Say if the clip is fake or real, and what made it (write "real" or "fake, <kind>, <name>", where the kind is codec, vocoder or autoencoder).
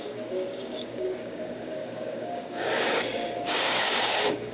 fake, codec, DAC